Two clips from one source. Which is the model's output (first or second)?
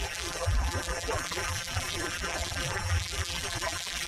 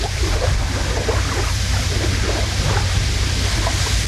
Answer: first